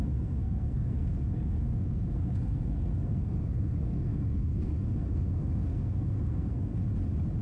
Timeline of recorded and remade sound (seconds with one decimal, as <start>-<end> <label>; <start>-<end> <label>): 0.0-6.7 remade; 6.7-7.4 recorded